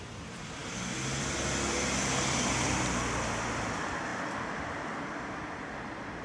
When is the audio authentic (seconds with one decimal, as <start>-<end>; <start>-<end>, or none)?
0.0-6.2